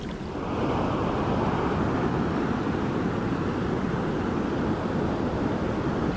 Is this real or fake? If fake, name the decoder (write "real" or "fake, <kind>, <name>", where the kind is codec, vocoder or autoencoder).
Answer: real